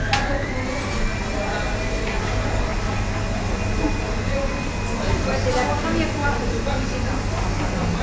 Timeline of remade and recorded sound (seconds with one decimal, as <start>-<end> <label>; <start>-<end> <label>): 0.0-8.0 recorded